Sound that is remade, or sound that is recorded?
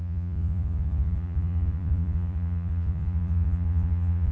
remade